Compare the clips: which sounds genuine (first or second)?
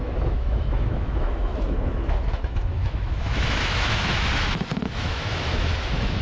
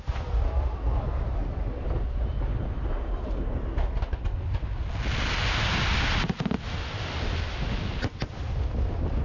second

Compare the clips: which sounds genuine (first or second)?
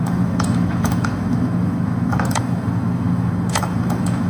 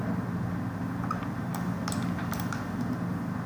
second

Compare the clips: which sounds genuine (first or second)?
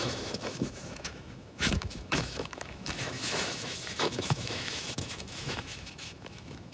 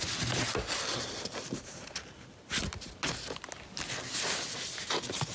second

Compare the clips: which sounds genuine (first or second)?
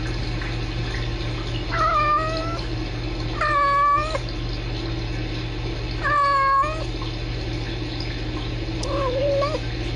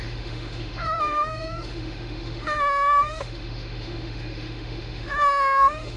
first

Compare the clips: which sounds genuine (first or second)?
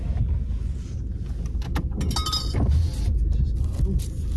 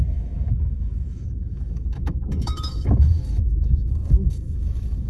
first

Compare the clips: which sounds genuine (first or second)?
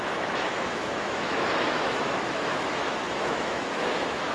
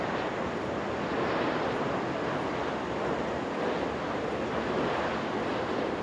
second